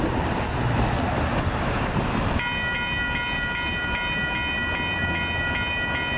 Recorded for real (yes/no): yes